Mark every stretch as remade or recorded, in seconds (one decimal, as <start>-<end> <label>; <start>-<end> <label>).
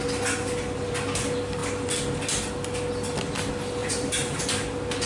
0.0-3.8 recorded; 3.8-4.4 remade; 4.4-5.1 recorded